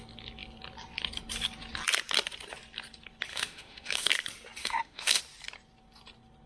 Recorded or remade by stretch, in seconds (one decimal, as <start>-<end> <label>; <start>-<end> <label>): 0.0-3.3 recorded; 3.3-4.1 remade; 4.1-4.6 recorded; 4.6-5.2 remade; 5.2-6.5 recorded